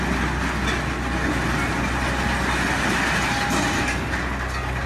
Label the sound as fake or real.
real